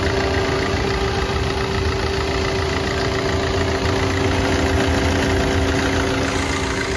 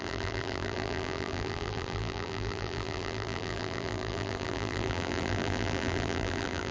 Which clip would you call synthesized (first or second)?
second